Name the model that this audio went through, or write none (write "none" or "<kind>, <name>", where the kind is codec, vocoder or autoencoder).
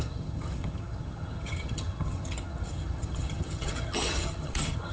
vocoder, HiFi-GAN